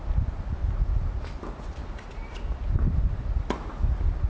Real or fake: fake